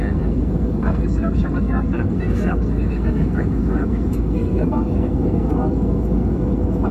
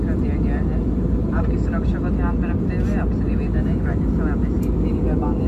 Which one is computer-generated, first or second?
first